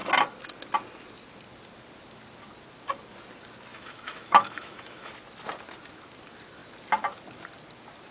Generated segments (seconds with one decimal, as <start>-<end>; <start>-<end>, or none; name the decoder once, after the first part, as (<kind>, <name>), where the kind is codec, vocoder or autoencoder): 3.7-5.1 (autoencoder, DAC-VAE)